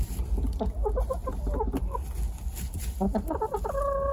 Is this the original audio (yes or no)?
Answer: yes